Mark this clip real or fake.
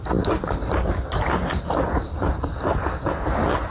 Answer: real